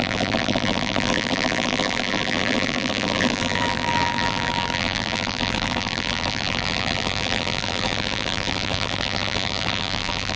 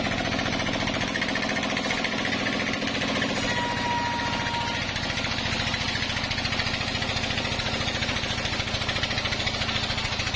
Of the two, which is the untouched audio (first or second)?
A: second